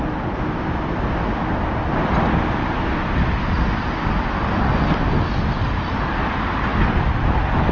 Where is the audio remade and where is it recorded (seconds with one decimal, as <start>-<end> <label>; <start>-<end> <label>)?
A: 0.0-7.7 recorded